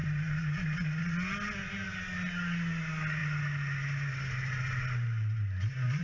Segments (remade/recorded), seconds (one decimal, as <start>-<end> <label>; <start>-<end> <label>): 0.0-6.0 recorded